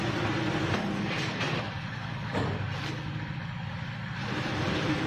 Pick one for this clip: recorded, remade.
recorded